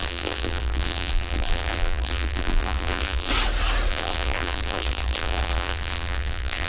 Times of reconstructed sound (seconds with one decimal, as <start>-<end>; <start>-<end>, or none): 0.0-3.3; 3.9-6.7